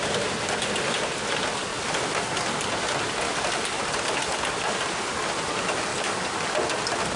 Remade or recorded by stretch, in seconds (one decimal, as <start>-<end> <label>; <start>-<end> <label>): 0.0-7.2 recorded